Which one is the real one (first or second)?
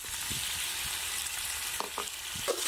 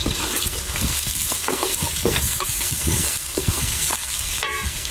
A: first